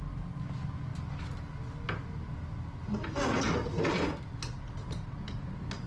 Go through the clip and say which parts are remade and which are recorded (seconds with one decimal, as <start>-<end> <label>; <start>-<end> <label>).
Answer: 0.0-5.9 recorded